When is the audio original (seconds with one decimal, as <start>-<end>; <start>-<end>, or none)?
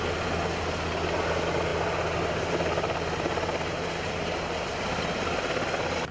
0.0-6.1